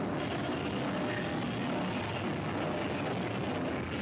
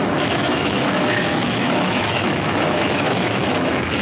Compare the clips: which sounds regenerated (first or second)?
second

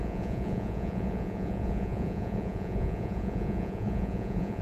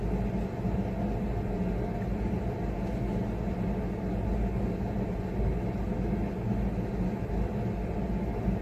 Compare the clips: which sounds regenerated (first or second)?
first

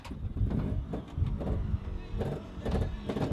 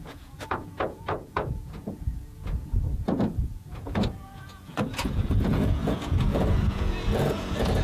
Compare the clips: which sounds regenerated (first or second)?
second